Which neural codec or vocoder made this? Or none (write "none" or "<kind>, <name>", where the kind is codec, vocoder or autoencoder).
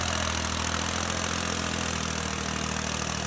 none